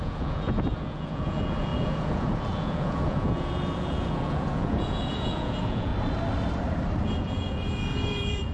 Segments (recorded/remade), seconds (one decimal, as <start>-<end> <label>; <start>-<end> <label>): 0.0-5.9 remade; 5.9-7.0 recorded; 7.0-8.5 remade